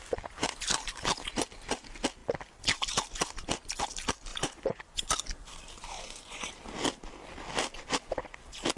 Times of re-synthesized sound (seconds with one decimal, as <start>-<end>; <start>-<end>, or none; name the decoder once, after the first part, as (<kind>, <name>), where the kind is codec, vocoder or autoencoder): 4.3-5.1 (vocoder, Vocos); 5.9-6.5